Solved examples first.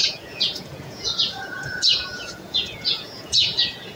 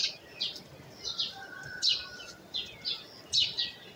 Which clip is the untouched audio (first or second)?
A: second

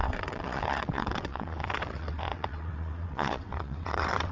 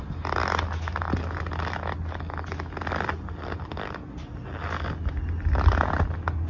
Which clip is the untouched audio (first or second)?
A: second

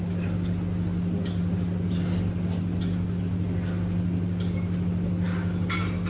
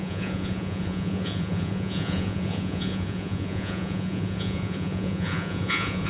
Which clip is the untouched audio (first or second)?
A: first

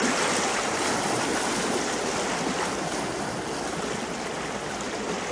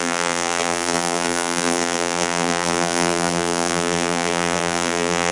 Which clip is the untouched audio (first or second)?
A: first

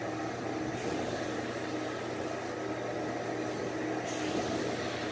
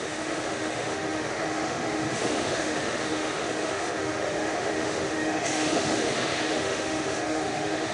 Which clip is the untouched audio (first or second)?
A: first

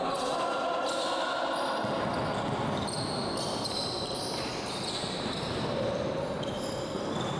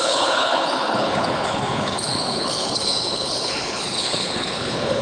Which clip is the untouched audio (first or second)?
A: first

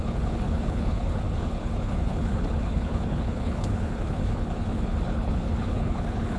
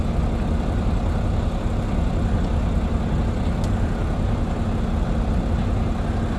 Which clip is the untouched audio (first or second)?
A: second